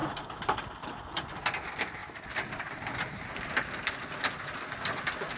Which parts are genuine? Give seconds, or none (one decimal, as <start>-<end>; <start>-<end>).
0.0-5.4